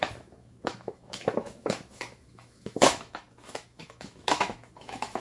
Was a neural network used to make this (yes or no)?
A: yes